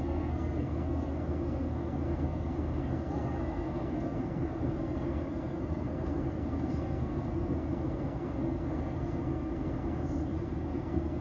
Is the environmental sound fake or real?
fake